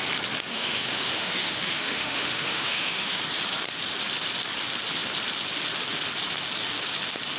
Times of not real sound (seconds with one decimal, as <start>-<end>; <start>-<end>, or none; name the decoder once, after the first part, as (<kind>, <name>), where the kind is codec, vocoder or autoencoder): 0.5-3.2 (autoencoder, DAC-VAE)